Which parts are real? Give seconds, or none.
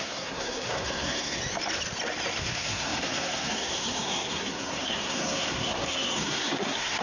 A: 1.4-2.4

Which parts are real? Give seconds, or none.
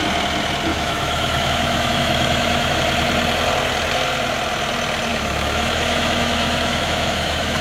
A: 0.0-0.7; 2.8-5.1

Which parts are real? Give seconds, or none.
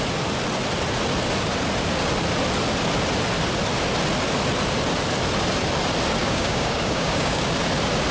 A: 0.0-6.2; 7.4-8.1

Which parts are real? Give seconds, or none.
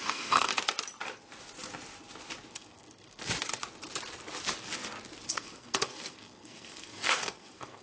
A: 0.5-2.5; 3.2-5.3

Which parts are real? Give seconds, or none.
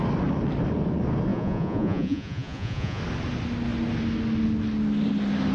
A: 0.0-1.3; 3.0-5.5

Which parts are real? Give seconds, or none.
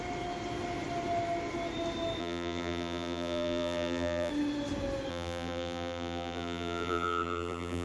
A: 0.0-2.2; 4.3-5.1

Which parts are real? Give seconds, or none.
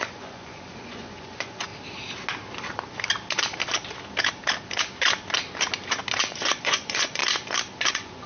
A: 1.7-6.2; 7.2-7.9